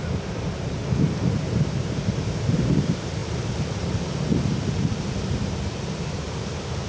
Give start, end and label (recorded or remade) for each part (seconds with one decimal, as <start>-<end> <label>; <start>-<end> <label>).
0.0-0.8 remade; 0.8-1.8 recorded; 1.8-6.9 remade